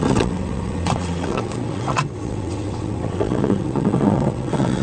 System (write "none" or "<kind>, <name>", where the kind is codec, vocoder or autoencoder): vocoder, WaveNeXt